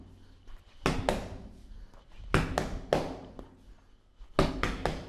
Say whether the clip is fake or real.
real